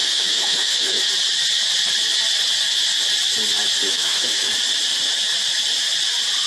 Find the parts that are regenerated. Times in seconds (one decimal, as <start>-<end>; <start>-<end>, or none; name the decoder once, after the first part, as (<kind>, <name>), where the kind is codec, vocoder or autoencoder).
0.0-1.0 (autoencoder, DAC-VAE); 3.9-4.5